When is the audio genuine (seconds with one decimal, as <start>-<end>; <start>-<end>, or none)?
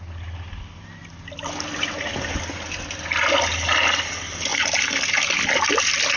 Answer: 0.0-4.5; 5.5-6.2